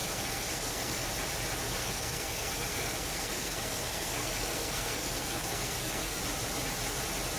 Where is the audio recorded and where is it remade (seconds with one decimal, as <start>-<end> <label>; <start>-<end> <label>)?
0.0-1.1 remade; 1.1-1.8 recorded; 1.8-6.2 remade; 6.2-7.4 recorded

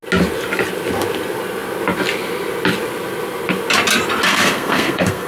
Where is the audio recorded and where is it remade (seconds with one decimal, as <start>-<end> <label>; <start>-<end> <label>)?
0.0-4.3 recorded; 4.3-5.3 remade

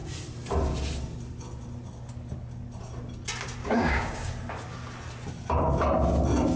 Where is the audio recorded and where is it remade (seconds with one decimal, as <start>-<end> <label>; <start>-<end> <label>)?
0.0-3.6 recorded; 3.6-4.3 remade; 4.3-6.6 recorded

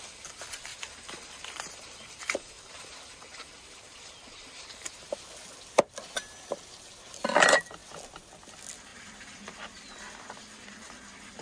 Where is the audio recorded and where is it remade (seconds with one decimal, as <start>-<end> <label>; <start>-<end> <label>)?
0.0-0.7 recorded; 0.7-4.8 remade; 4.8-8.9 recorded; 8.9-9.4 remade; 9.4-11.4 recorded

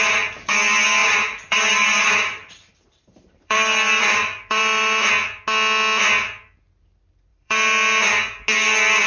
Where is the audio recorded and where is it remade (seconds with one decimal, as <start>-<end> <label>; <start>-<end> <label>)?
0.0-1.0 recorded; 1.0-5.1 remade; 5.1-7.3 recorded; 7.3-8.1 remade; 8.1-9.1 recorded

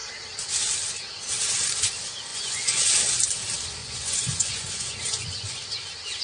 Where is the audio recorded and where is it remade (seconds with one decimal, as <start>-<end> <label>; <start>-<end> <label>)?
0.0-2.3 recorded; 2.3-2.8 remade; 2.8-3.8 recorded; 3.8-5.6 remade; 5.6-6.2 recorded

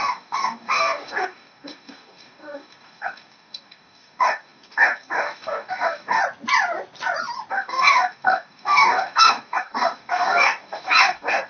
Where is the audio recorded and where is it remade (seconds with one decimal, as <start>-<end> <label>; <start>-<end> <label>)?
0.0-6.2 remade; 6.2-7.5 recorded; 7.5-11.5 remade

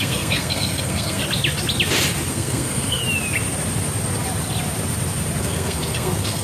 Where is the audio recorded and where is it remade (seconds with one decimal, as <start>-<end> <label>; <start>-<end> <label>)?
0.0-1.2 remade; 1.2-2.3 recorded; 2.3-3.0 remade; 3.0-5.4 recorded; 5.4-6.4 remade